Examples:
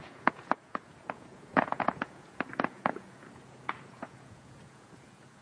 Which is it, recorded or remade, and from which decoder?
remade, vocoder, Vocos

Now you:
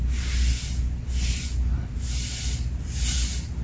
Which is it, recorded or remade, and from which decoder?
recorded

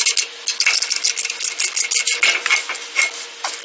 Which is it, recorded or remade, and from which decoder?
recorded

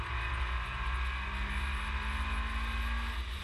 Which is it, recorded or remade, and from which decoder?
recorded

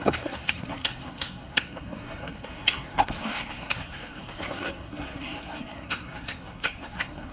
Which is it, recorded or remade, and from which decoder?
remade, codec, SNAC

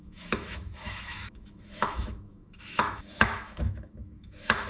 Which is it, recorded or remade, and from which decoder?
remade, autoencoder, DAC-VAE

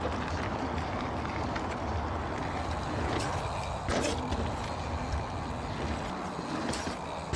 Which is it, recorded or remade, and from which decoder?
recorded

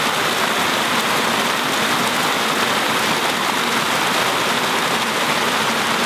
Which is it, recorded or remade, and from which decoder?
recorded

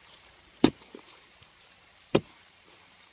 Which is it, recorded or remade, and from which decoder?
remade, vocoder, BigVGAN v2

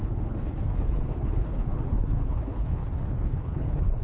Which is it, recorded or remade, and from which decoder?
remade, codec, HILCodec